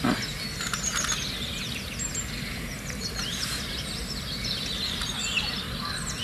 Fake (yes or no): no